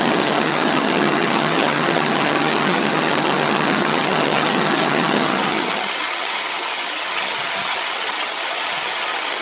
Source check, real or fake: fake